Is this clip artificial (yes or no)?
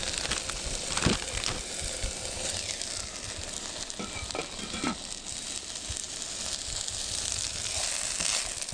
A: no